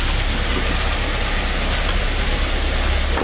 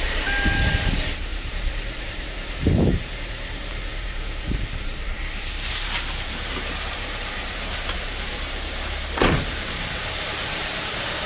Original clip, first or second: first